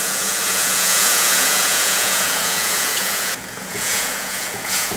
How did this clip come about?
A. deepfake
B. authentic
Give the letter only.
A